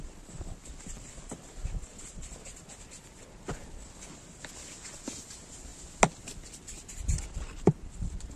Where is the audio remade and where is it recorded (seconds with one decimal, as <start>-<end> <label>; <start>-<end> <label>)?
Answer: 0.0-8.4 recorded